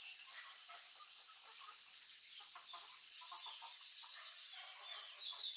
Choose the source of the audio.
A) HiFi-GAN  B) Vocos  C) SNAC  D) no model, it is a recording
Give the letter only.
D